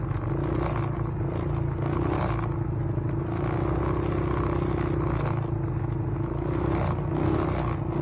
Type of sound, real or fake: real